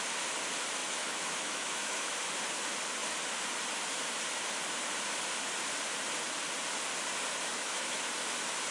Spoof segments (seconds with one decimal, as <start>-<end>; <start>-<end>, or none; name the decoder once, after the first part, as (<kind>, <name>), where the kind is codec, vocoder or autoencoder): 0.8-2.1 (autoencoder, DAC-VAE); 7.5-8.1

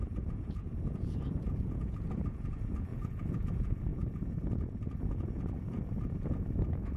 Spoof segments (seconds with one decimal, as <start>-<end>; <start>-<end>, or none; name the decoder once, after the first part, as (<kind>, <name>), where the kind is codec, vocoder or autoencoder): 0.0-7.0 (vocoder, Vocos)

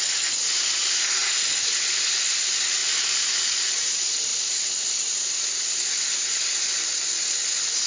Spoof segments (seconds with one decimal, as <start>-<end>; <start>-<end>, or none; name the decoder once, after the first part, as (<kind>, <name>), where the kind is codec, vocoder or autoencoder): none

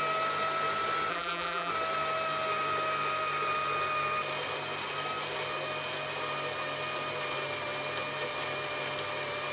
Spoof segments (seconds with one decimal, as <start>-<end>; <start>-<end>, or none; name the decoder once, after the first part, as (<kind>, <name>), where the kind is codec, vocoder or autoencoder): 1.1-1.7 (vocoder, BigVGAN v2)

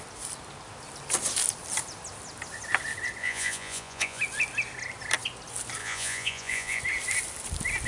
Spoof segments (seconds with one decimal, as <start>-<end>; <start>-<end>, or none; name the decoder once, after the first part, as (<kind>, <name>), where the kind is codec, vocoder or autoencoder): 3.2-4.2 (vocoder, Vocos); 5.8-6.8

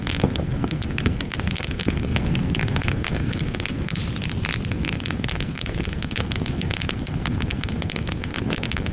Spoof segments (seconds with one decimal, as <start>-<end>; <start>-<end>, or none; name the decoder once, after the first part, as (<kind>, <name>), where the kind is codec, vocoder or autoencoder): 0.0-4.0 (codec, SNAC); 4.7-8.9

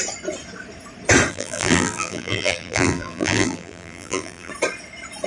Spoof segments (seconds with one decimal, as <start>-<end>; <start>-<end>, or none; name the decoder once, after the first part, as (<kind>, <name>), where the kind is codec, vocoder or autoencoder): 1.3-4.5 (vocoder, BigVGAN v2)